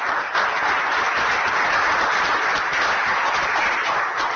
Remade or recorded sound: recorded